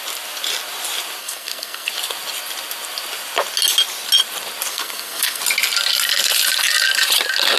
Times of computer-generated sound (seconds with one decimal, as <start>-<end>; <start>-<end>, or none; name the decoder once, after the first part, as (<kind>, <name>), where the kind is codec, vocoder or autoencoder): 1.2-1.9 (codec, SNAC); 4.7-5.4